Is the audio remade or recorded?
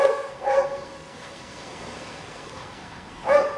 remade